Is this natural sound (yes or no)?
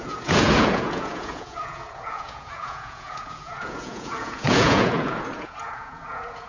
no